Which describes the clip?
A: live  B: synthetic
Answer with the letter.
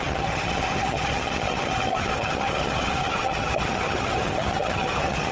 B